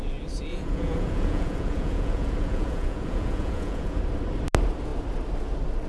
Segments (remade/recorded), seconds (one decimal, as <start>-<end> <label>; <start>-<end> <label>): 0.0-0.5 recorded; 0.5-4.0 remade; 4.0-5.9 recorded